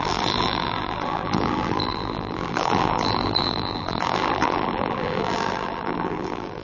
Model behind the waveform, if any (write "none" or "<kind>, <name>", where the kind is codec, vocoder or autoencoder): vocoder, BigVGAN v2